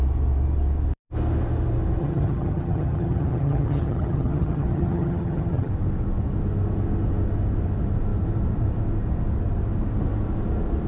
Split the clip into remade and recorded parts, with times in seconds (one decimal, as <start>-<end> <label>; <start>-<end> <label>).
0.0-2.0 recorded; 2.0-5.7 remade; 5.7-10.9 recorded